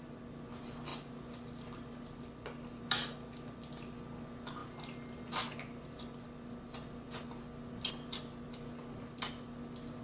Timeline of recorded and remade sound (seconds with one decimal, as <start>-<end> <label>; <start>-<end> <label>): 0.0-10.0 recorded